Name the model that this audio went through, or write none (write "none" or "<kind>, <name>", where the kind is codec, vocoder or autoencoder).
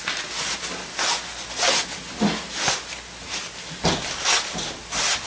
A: none